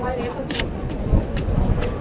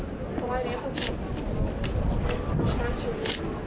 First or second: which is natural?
second